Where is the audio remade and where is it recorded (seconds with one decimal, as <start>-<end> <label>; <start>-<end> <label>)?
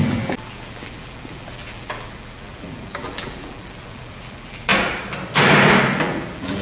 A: 0.0-4.7 remade; 4.7-6.0 recorded; 6.0-6.6 remade